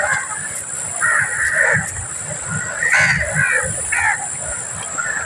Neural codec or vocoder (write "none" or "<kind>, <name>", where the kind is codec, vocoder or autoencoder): none